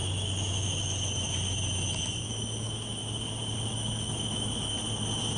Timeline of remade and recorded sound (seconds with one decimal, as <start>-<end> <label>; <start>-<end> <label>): 0.0-3.0 remade; 3.0-3.7 recorded; 3.7-4.7 remade; 4.7-5.4 recorded